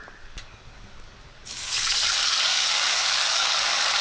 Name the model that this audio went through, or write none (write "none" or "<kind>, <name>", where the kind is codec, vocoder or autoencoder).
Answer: codec, DAC